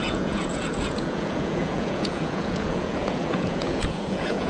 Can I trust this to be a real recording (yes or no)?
no